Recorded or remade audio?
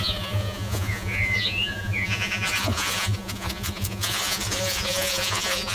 remade